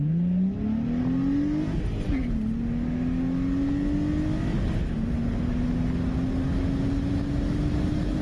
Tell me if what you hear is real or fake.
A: real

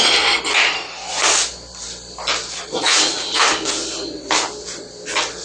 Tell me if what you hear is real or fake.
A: real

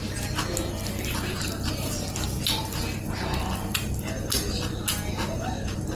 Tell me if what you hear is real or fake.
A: real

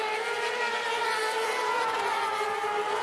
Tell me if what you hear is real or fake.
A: real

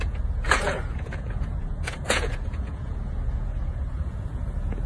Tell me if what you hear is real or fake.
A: fake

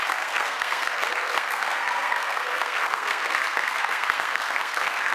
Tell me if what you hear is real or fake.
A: fake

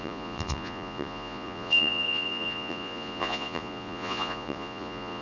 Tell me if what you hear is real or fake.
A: fake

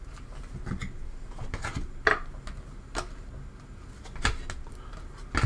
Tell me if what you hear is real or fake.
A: real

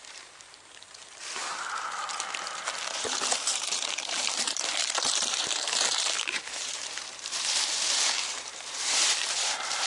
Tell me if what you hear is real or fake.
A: fake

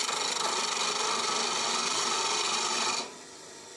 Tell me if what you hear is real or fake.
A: real